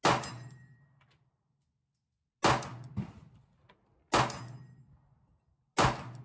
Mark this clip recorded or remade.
recorded